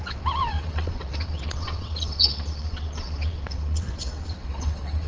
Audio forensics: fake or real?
fake